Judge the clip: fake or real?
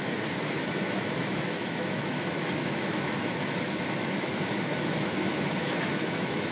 fake